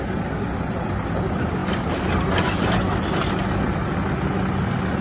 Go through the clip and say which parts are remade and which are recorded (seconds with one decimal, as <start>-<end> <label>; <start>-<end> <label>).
0.0-5.0 recorded